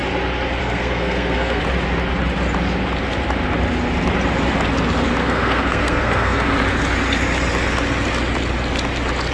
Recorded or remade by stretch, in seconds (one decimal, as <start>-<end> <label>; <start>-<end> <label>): 0.0-0.6 recorded; 0.6-1.6 remade; 1.6-5.2 recorded; 5.2-6.5 remade; 6.5-9.3 recorded